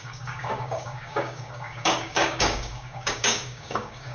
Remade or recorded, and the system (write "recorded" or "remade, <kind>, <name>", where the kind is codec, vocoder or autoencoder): remade, codec, DAC